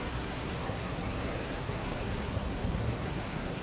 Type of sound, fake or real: fake